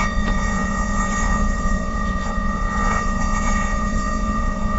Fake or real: fake